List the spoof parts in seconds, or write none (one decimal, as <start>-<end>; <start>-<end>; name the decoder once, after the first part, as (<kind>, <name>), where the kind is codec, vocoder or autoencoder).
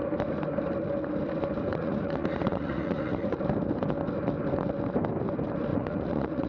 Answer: 1.7-3.4 (vocoder, Vocos); 5.7-6.5